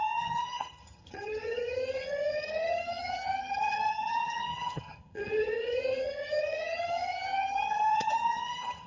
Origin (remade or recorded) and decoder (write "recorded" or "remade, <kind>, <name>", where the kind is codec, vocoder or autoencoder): remade, vocoder, HiFi-GAN